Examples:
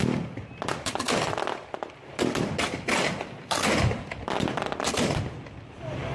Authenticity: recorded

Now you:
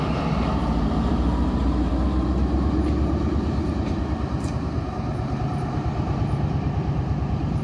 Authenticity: remade